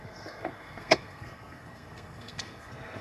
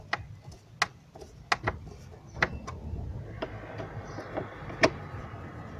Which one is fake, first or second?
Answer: first